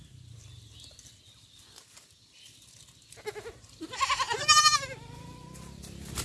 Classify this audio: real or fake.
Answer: real